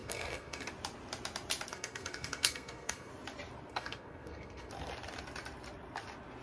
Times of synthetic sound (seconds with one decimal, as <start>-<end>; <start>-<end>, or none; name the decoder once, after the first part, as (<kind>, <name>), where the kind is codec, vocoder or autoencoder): 0.0-0.7 (codec, SNAC); 1.7-3.1; 3.7-4.7